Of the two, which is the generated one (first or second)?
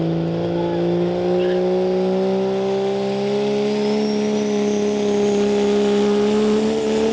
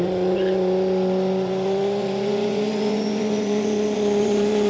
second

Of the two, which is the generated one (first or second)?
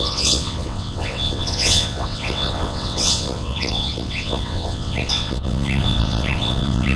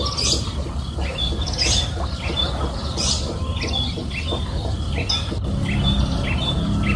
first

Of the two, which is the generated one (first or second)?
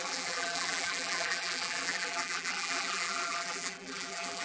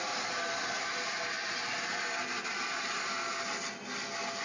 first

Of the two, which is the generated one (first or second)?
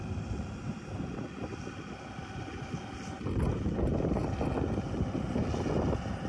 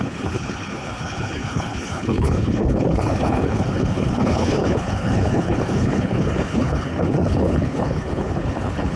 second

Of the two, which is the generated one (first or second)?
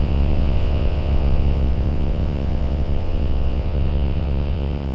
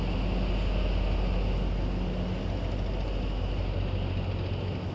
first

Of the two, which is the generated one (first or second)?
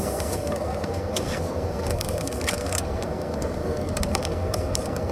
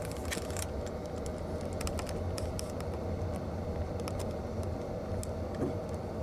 first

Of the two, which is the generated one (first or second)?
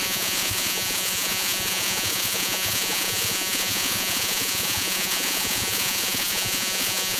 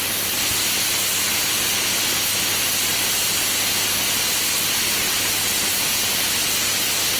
first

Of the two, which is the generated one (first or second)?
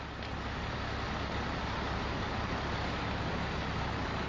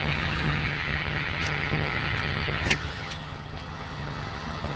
second